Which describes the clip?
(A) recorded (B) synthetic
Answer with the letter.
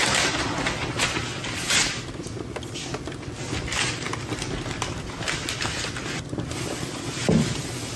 A